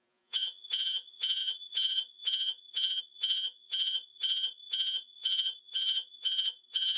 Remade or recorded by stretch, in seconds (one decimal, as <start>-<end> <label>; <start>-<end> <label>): 0.0-7.0 remade